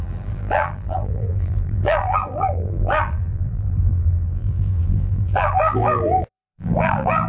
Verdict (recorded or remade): remade